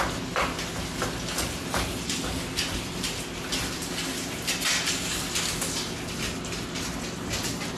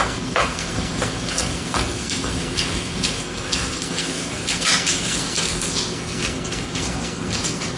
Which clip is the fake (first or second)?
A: second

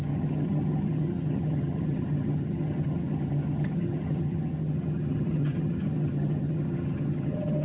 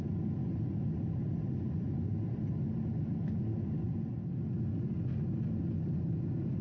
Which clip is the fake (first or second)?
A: first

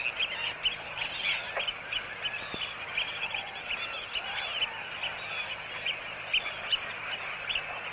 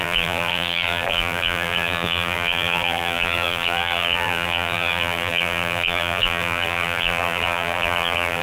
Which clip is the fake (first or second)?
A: second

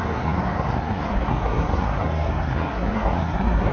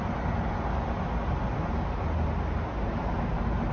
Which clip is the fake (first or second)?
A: first